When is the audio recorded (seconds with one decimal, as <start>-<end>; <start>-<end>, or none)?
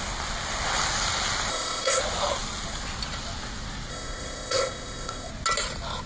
0.0-1.5; 2.0-3.9; 5.3-6.1